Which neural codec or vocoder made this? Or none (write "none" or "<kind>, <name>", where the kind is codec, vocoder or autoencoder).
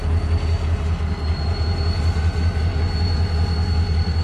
none